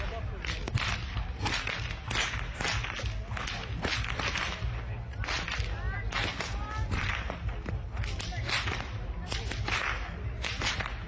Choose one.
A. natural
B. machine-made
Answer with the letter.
A